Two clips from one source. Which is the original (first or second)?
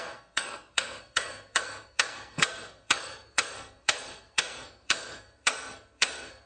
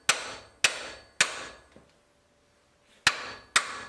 second